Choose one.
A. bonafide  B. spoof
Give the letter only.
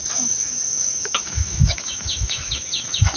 B